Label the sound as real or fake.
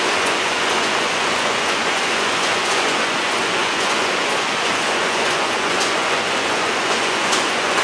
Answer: fake